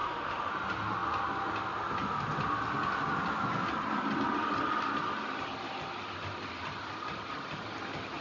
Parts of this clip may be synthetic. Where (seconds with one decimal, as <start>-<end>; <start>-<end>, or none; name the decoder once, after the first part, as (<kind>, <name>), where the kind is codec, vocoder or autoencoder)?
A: 0.0-0.5 (autoencoder, DAC-VAE)